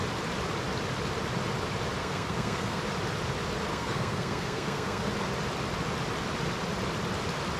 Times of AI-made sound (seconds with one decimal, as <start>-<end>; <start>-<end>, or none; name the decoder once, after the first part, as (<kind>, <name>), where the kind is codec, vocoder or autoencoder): 2.0-2.8 (codec, SNAC); 3.7-5.1